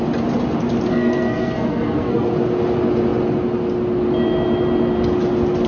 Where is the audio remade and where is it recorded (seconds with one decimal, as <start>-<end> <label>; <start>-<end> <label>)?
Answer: 0.0-0.9 recorded; 0.9-2.3 remade; 2.3-5.7 recorded